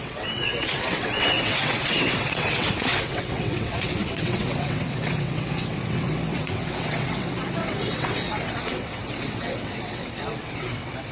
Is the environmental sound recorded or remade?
remade